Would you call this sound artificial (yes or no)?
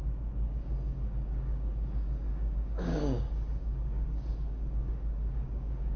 yes